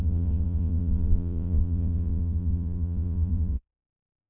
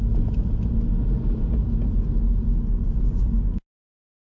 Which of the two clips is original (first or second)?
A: second